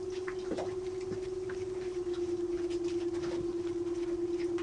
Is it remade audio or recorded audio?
recorded